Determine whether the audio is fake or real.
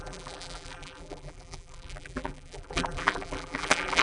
fake